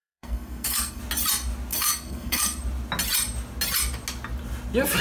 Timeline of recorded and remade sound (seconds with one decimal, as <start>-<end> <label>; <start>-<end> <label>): 0.0-1.0 remade; 1.0-1.7 recorded; 1.7-2.6 remade; 2.6-5.0 recorded